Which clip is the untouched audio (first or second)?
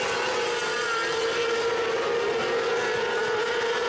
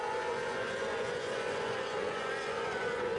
first